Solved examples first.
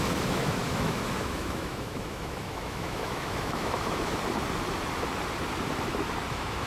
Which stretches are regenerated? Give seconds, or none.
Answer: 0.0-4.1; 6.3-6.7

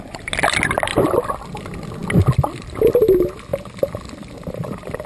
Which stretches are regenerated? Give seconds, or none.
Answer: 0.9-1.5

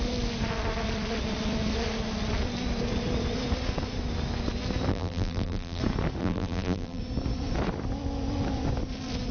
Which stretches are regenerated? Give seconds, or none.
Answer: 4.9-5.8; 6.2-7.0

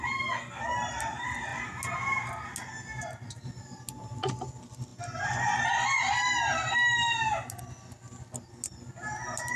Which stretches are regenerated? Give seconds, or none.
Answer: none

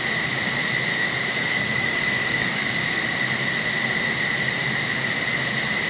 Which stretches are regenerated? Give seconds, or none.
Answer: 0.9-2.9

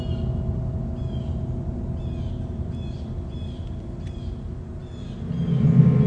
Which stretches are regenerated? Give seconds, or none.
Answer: none

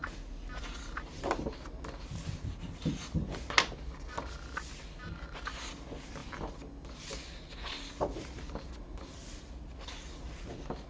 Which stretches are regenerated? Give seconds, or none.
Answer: none